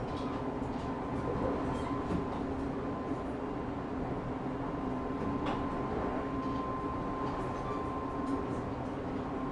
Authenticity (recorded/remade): recorded